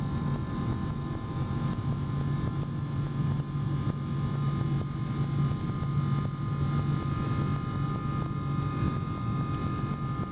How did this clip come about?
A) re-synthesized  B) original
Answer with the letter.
B